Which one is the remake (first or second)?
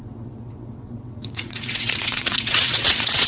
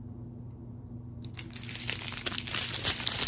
first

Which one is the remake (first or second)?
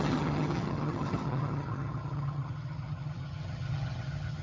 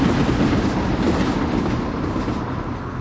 first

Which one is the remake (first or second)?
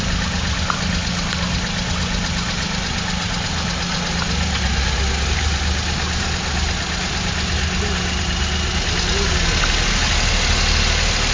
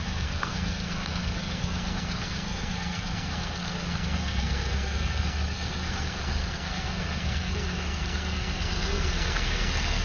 second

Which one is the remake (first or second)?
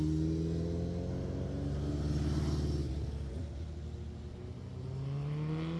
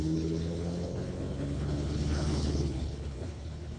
second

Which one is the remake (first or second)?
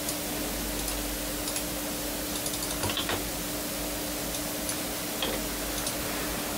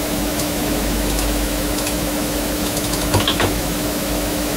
second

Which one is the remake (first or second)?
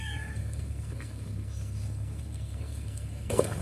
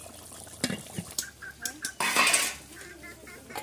first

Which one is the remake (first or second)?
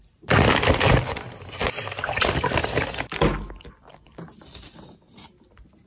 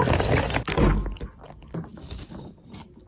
second